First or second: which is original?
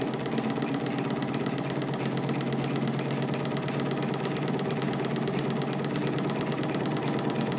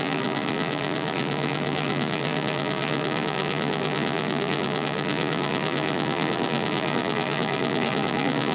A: first